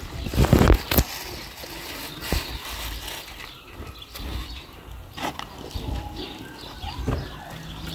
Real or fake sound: real